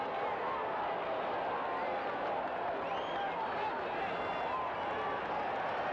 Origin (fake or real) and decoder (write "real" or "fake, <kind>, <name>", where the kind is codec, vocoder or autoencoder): real